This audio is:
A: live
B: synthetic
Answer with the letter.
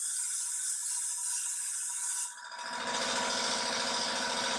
A